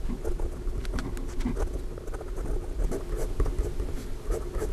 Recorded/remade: recorded